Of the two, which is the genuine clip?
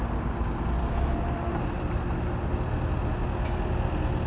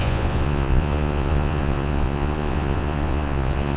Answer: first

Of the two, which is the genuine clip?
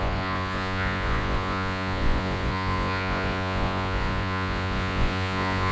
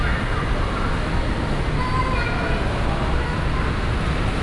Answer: second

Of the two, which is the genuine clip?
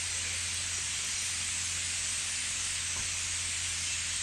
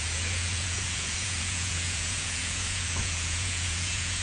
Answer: first